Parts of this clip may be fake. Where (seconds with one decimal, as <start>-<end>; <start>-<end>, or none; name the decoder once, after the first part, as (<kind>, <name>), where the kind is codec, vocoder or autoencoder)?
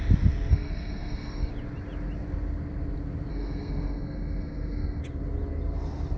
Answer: 0.5-1.5 (codec, SNAC); 3.3-5.0